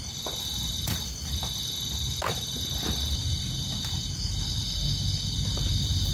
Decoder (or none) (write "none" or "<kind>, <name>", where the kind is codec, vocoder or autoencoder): none